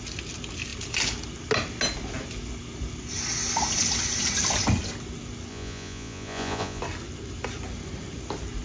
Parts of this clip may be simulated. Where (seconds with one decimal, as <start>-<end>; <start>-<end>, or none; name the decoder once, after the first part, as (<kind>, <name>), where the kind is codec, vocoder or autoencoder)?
5.5-6.8 (vocoder, Vocos)